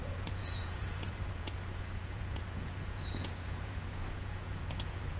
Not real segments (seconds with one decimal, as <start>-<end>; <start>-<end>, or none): 0.0-5.2

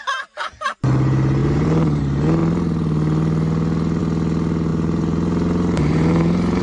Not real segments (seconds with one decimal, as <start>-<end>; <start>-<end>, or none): 1.4-2.0; 4.7-6.6